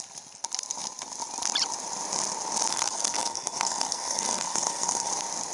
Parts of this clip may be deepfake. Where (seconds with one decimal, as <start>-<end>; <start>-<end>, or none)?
2.7-5.1